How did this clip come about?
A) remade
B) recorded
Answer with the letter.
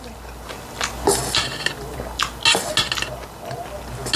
B